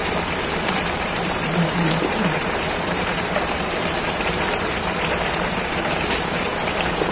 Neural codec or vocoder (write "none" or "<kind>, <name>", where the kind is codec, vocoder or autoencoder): vocoder, BigVGAN v2